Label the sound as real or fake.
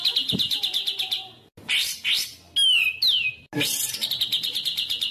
real